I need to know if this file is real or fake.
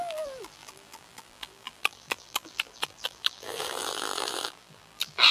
fake